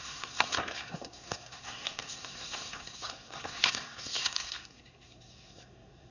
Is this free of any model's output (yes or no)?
no